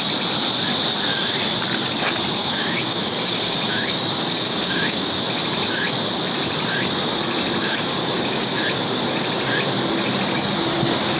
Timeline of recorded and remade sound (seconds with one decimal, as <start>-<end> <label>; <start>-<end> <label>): 0.0-2.4 recorded; 2.4-5.2 remade; 5.2-7.6 recorded; 7.6-8.5 remade; 8.5-11.2 recorded